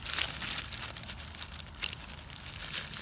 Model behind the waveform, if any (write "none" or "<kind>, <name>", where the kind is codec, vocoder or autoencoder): none